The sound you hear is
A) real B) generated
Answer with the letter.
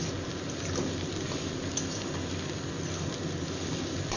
A